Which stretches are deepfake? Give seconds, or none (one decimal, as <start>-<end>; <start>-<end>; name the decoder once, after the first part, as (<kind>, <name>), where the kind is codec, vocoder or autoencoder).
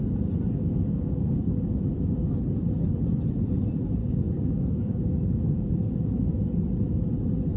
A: 0.6-1.6 (codec, DAC); 4.0-6.3